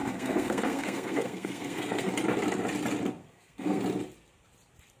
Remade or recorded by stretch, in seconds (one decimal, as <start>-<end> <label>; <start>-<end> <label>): 0.0-2.1 remade; 2.1-3.2 recorded; 3.2-3.8 remade; 3.8-5.0 recorded